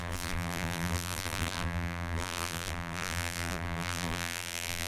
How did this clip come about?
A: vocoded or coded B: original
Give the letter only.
A